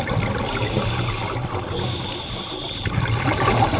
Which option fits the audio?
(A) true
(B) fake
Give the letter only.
A